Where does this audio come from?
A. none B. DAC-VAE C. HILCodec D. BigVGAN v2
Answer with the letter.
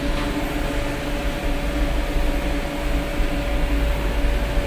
A